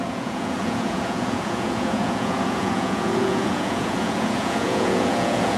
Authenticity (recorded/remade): remade